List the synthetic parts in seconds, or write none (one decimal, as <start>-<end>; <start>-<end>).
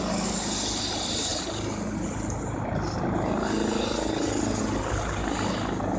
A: none